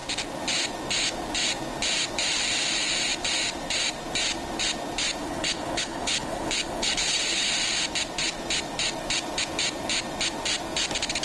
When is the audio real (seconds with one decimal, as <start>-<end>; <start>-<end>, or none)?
0.0-5.2; 7.5-11.2